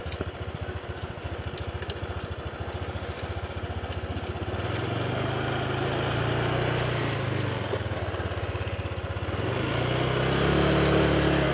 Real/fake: real